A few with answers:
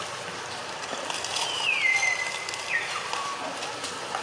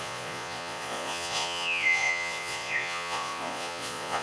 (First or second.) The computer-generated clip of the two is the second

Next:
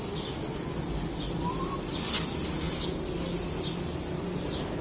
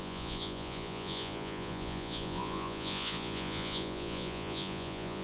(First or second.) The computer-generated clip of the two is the second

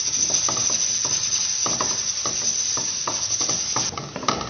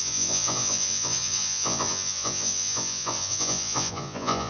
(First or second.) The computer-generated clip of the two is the second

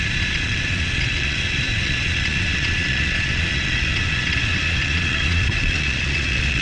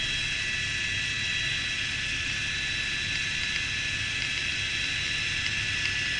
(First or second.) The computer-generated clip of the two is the first